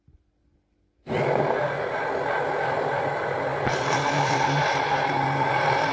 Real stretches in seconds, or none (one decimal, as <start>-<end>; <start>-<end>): 0.4-3.0